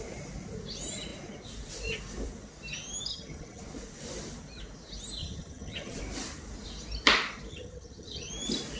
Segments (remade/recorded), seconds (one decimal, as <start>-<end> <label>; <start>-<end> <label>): 0.0-3.1 recorded; 3.1-3.6 remade; 3.6-5.2 recorded; 5.2-6.0 remade; 6.0-7.5 recorded; 7.5-8.3 remade; 8.3-8.8 recorded